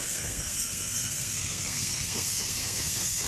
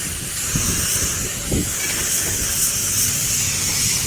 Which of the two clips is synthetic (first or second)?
first